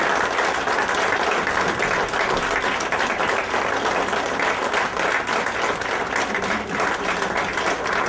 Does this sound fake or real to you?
real